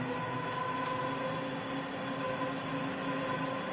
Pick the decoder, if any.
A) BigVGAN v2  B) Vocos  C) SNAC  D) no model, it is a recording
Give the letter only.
D